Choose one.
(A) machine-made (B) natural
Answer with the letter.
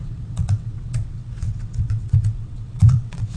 A